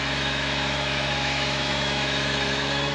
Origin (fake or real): fake